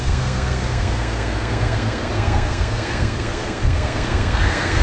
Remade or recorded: remade